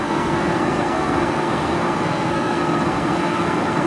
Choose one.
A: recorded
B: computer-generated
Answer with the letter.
B